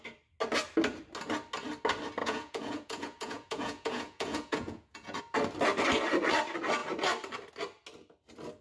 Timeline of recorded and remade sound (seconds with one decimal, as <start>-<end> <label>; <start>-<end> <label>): 0.0-2.2 recorded; 2.2-5.2 remade; 5.2-8.6 recorded